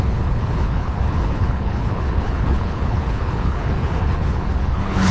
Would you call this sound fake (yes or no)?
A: yes